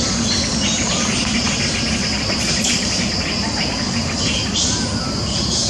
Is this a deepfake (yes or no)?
no